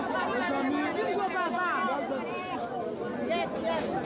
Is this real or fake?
real